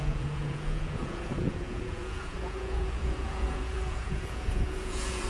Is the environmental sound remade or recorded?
remade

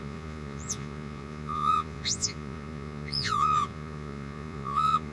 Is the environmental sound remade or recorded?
remade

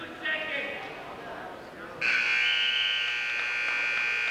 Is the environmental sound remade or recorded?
recorded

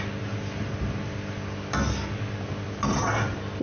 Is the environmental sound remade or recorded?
recorded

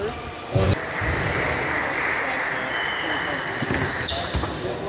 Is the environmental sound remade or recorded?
recorded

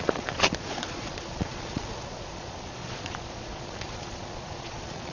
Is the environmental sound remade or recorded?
remade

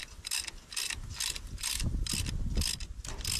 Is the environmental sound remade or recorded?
recorded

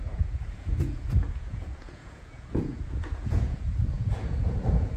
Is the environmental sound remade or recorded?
remade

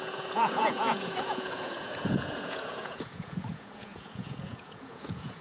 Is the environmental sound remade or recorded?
remade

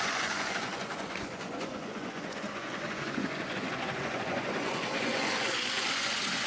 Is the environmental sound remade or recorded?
remade